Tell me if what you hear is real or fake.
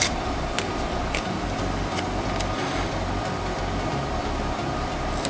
real